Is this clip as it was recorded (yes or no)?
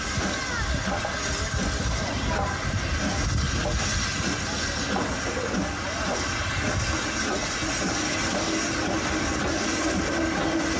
yes